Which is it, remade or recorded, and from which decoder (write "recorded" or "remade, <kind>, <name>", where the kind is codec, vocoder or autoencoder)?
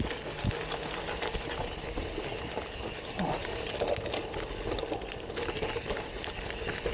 recorded